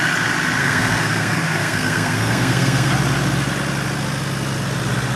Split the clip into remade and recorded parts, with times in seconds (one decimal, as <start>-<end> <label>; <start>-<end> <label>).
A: 0.0-0.6 recorded; 0.6-2.9 remade; 2.9-5.2 recorded